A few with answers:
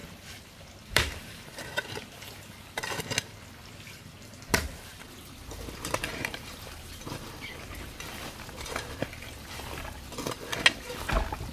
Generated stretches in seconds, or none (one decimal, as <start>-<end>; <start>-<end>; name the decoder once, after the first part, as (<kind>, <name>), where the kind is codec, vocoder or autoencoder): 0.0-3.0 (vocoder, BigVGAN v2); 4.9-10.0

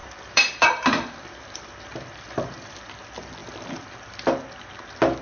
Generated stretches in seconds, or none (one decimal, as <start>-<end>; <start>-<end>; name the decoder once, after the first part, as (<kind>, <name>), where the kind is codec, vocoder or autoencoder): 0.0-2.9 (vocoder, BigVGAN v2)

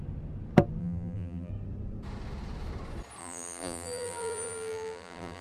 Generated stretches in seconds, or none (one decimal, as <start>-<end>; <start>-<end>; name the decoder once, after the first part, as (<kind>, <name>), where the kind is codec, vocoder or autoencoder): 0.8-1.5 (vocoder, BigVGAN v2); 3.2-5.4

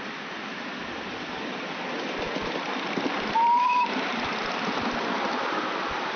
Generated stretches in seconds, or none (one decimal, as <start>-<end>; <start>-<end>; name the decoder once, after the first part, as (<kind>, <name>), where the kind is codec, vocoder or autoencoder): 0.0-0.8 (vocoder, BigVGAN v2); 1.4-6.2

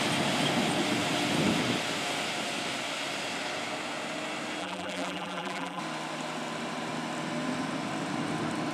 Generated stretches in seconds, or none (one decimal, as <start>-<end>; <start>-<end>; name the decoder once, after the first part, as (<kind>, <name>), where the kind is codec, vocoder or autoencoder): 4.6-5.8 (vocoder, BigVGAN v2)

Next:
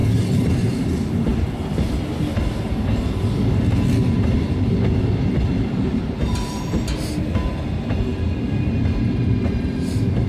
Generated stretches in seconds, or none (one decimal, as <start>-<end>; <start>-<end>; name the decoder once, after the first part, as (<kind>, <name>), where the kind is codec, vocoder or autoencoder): none

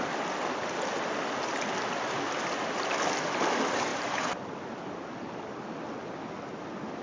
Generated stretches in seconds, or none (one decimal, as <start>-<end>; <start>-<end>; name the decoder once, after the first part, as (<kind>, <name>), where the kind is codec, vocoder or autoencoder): 3.9-4.4 (vocoder, BigVGAN v2)

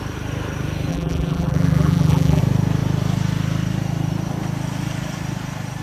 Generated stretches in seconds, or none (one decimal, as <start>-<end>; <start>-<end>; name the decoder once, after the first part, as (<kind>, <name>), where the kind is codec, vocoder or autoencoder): 0.9-2.4 (vocoder, BigVGAN v2)